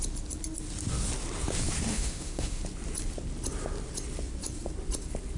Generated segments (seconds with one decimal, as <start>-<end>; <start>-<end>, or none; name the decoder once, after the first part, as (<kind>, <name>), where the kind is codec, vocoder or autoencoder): 1.9-2.6 (autoencoder, DAC-VAE)